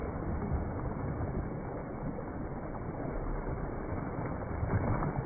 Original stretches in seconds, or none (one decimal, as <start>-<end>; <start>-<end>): 1.8-5.3